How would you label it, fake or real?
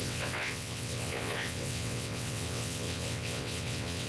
fake